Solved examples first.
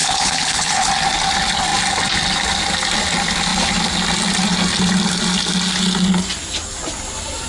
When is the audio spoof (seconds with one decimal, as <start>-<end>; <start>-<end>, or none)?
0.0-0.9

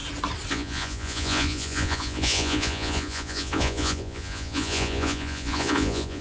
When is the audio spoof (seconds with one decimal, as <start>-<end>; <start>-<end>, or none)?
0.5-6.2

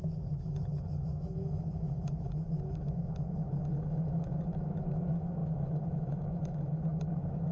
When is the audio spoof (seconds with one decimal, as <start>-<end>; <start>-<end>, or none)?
0.0-7.5

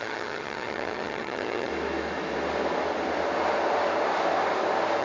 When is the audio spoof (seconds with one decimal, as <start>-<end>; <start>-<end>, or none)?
0.0-1.7

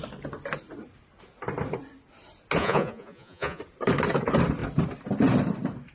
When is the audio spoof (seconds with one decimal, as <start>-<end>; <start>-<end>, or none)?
2.6-3.6

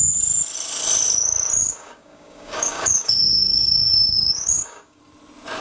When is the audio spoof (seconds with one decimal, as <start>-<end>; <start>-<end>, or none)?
1.6-5.0